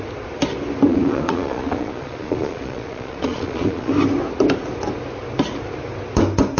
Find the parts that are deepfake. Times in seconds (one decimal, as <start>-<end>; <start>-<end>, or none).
0.9-3.9

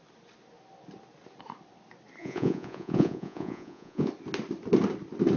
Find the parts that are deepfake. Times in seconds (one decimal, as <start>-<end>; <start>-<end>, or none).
2.2-4.1

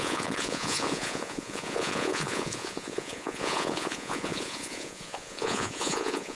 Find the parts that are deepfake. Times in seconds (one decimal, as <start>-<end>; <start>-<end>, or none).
0.0-6.3

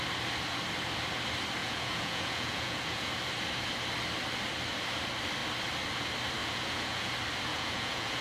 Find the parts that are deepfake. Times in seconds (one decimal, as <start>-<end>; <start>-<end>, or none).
1.6-3.1; 6.4-7.1; 7.5-8.2

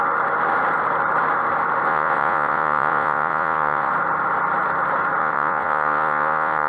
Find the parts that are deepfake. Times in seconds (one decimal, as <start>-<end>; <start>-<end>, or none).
1.9-3.9; 5.2-6.7

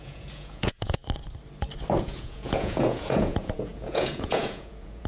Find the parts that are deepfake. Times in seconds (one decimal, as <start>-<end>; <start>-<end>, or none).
0.0-1.0; 2.0-5.1